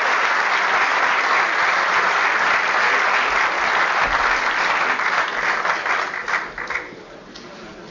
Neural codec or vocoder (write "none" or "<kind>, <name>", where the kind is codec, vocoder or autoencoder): none